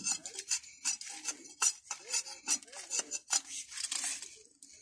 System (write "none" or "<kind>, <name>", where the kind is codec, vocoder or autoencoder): none